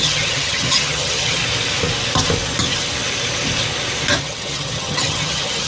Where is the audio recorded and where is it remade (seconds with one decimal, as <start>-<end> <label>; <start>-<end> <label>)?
0.0-1.4 remade; 1.4-4.2 recorded; 4.2-5.7 remade